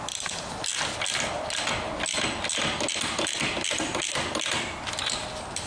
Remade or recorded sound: recorded